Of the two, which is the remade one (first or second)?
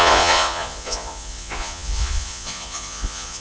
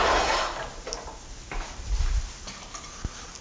first